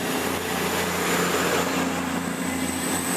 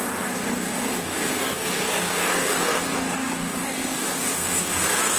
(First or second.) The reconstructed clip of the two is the second